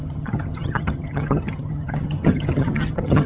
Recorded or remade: remade